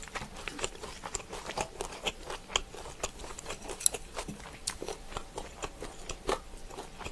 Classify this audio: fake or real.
real